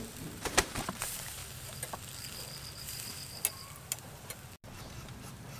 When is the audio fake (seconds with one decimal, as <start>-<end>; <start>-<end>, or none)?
0.0-1.4; 4.8-5.6